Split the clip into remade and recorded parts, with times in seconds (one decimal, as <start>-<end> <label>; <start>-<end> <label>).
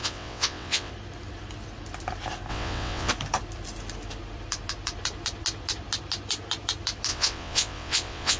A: 0.0-0.9 remade; 0.9-2.5 recorded; 2.5-3.1 remade; 3.1-7.1 recorded; 7.1-8.4 remade